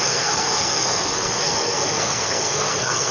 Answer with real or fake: fake